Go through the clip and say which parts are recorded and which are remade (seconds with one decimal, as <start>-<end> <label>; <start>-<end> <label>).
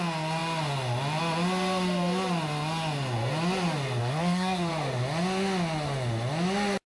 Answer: 0.0-4.0 recorded; 4.0-4.7 remade; 4.7-7.0 recorded